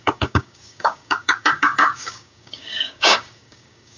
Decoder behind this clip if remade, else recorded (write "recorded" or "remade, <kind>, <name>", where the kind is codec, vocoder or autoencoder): remade, codec, DAC